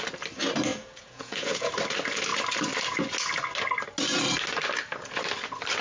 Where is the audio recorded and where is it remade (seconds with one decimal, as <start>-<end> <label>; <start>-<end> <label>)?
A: 0.0-0.7 recorded; 0.7-1.7 remade; 1.7-5.8 recorded

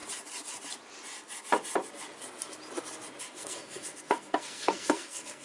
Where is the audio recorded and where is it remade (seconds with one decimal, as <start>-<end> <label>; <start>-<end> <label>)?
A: 0.0-3.2 recorded; 3.2-5.4 remade

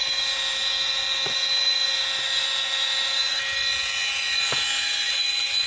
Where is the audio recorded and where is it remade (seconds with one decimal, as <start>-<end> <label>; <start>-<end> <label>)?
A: 0.0-5.7 recorded

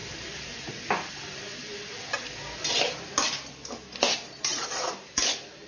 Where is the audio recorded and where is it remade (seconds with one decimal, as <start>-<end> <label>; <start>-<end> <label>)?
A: 0.0-0.7 remade; 0.7-4.5 recorded; 4.5-5.2 remade; 5.2-5.7 recorded

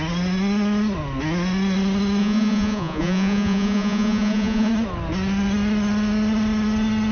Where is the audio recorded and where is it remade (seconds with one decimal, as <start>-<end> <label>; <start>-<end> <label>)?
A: 0.0-2.2 recorded; 2.2-4.7 remade; 4.7-7.1 recorded

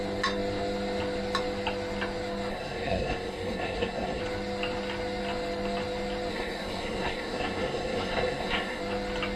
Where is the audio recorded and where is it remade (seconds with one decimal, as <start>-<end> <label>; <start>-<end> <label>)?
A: 0.0-2.5 recorded; 2.5-4.2 remade; 4.2-6.3 recorded; 6.3-8.8 remade; 8.8-9.4 recorded

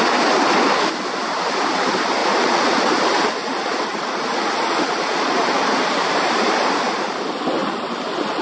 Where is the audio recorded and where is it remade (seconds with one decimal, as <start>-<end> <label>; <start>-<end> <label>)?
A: 0.0-2.2 recorded; 2.2-2.8 remade; 2.8-3.4 recorded; 3.4-5.2 remade; 5.2-8.4 recorded